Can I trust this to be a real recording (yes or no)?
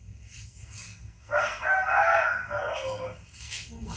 no